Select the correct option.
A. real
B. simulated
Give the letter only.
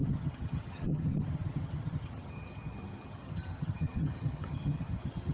B